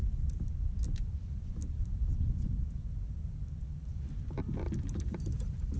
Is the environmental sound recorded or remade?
remade